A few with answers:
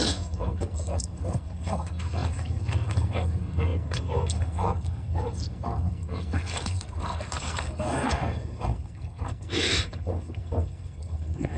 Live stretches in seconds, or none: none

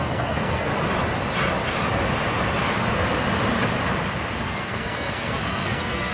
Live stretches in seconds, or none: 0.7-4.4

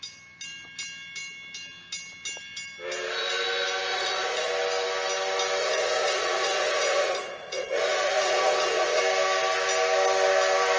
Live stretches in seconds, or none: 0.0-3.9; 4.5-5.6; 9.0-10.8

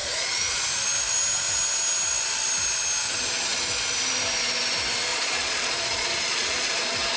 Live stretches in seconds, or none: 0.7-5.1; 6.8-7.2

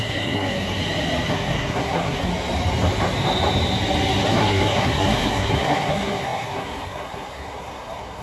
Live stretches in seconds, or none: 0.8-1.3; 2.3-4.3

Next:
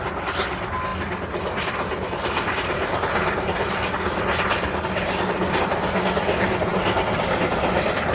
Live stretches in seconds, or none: 0.0-8.1

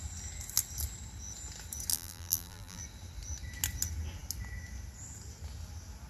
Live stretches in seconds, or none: 0.0-1.9; 2.8-6.1

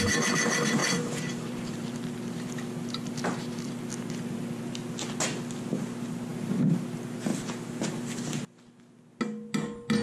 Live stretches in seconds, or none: 0.0-0.8; 4.6-6.3; 6.8-10.0